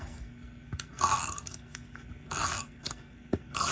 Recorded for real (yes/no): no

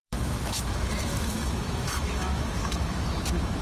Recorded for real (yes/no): no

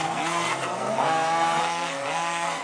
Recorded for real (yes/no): no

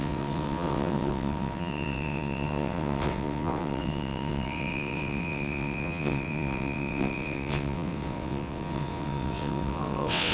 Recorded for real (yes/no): no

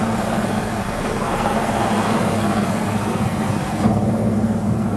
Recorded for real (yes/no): no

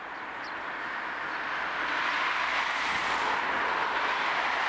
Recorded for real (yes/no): yes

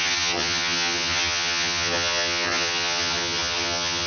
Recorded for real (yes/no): no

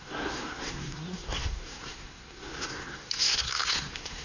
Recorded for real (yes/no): no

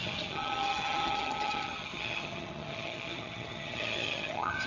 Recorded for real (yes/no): no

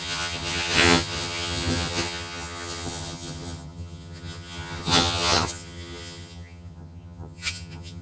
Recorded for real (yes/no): no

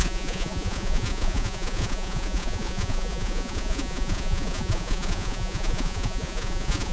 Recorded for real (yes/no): no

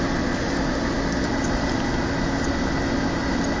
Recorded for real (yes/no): yes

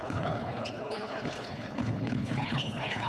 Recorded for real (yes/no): no